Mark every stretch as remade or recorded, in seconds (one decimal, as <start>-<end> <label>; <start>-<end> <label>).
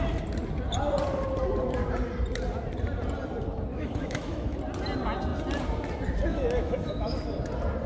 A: 0.0-3.7 recorded; 3.7-4.6 remade; 4.6-6.3 recorded; 6.3-7.2 remade; 7.2-7.9 recorded